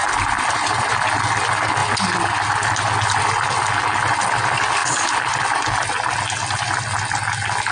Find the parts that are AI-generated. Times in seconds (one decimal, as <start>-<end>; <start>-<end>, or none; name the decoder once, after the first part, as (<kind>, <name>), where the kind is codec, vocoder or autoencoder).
none